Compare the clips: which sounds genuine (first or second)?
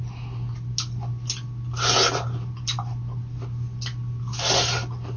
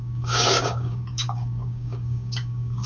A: first